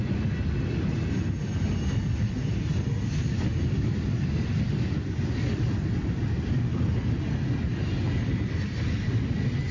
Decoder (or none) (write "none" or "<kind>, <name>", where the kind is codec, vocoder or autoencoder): none